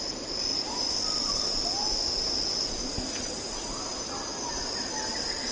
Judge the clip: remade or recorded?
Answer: recorded